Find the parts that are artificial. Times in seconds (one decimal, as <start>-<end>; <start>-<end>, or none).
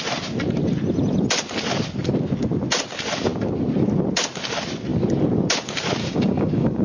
6.0-6.8